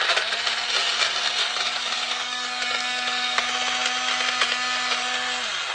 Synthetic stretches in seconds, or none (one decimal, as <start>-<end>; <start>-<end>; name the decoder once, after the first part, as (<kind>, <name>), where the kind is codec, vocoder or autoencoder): 1.4-3.4 (codec, DAC)